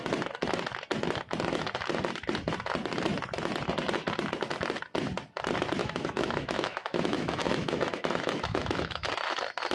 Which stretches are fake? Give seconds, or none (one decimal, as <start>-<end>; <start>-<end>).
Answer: 5.8-9.1